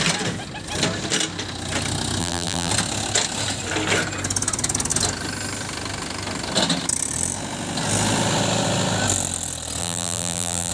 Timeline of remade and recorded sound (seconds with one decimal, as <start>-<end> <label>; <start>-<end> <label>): 0.0-2.2 recorded; 2.2-2.7 remade; 2.7-9.8 recorded; 9.8-10.7 remade